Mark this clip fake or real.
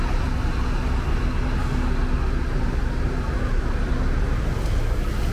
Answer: real